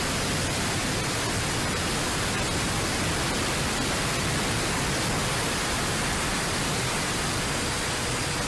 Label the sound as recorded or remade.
recorded